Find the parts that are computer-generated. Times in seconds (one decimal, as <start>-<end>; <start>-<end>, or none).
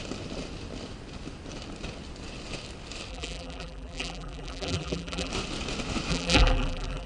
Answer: 3.1-5.3; 6.1-7.1